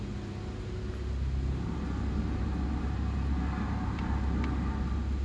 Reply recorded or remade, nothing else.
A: recorded